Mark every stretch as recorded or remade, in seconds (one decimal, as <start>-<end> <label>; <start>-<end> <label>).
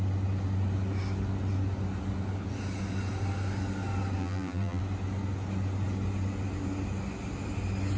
0.0-4.2 recorded; 4.2-4.8 remade; 4.8-8.0 recorded